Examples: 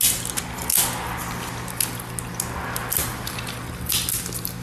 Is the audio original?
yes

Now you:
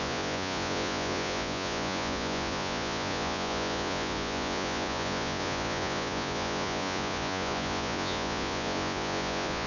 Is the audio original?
no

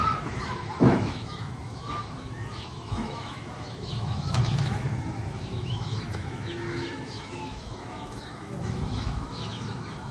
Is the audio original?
no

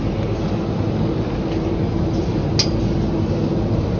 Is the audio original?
yes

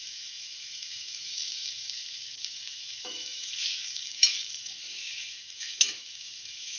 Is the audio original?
no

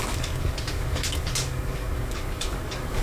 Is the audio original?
no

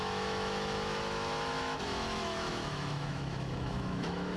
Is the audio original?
no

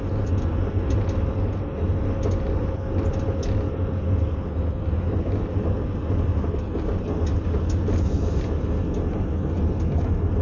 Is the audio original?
yes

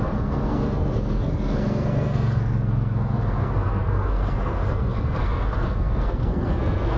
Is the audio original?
no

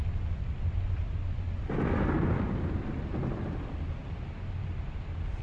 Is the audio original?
yes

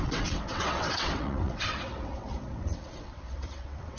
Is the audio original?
no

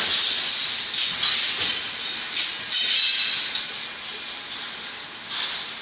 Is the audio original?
yes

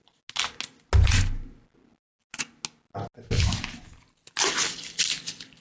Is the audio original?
yes